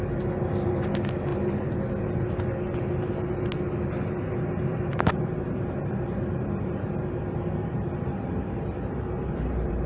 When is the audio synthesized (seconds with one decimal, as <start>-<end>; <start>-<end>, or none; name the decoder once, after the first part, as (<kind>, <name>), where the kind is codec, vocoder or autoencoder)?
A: 1.3-1.9 (vocoder, BigVGAN v2); 4.7-9.9

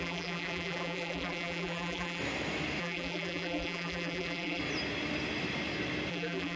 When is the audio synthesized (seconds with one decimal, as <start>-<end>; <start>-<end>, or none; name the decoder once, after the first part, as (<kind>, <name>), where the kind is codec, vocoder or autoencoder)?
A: 0.0-2.2 (vocoder, BigVGAN v2); 2.8-4.6; 6.1-6.6